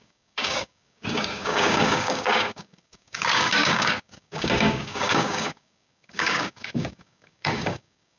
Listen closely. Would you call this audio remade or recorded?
remade